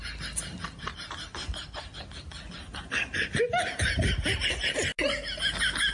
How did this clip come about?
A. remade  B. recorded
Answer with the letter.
B